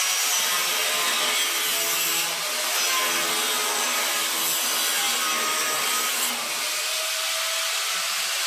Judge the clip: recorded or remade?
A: recorded